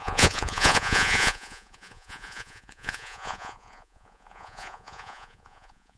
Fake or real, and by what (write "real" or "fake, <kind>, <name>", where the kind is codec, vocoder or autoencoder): fake, vocoder, Vocos